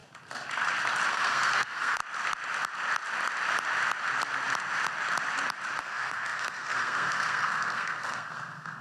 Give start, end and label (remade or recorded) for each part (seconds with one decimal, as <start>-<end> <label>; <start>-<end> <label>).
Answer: 0.0-1.1 recorded; 1.1-2.0 remade; 2.0-5.8 recorded; 5.8-8.8 remade